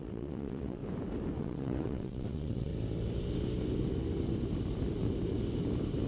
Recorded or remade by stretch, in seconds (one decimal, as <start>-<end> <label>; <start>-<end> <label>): 0.0-0.8 remade; 0.8-1.4 recorded; 1.4-2.7 remade; 2.7-6.1 recorded